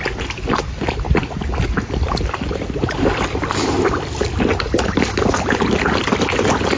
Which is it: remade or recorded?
recorded